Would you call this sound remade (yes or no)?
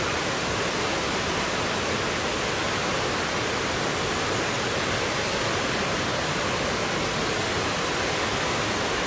no